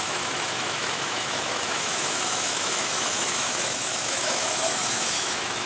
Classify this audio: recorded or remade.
remade